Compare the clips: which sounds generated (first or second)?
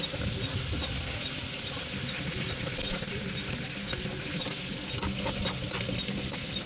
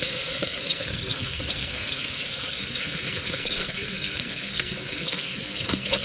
second